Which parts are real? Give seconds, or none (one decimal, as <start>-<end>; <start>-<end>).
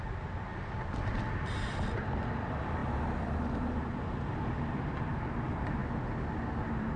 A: 0.5-1.3; 5.8-6.6